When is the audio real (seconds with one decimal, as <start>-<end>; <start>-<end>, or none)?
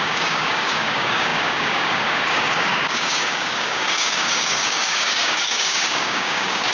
none